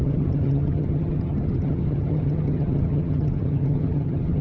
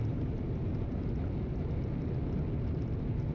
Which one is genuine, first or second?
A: second